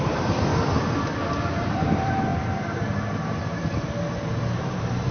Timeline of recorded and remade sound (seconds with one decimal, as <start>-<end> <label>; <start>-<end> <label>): 0.0-0.5 remade; 0.5-1.5 recorded; 1.5-3.6 remade; 3.6-4.6 recorded; 4.6-5.1 remade